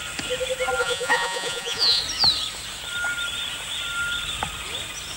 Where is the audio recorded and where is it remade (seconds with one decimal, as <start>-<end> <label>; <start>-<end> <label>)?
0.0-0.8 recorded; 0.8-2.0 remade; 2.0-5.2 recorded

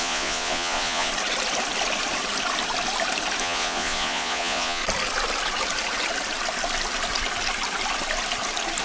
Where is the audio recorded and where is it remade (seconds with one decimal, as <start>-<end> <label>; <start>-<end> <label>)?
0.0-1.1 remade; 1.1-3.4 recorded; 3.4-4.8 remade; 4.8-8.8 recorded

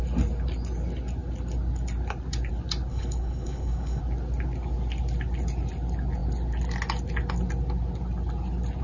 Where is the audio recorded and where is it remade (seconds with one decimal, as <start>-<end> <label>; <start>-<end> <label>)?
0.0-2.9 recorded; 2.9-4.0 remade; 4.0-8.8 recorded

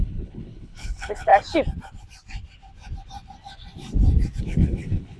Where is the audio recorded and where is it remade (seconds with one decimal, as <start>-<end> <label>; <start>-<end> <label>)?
0.0-1.3 remade; 1.3-4.4 recorded; 4.4-5.2 remade